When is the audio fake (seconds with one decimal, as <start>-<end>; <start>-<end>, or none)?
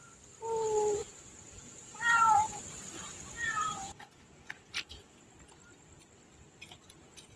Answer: 1.0-2.6; 3.0-5.2